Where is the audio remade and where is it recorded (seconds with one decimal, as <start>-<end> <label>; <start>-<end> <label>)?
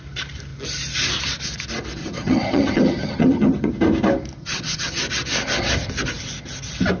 0.0-2.0 recorded; 2.0-3.7 remade; 3.7-4.4 recorded; 4.4-4.9 remade; 4.9-7.0 recorded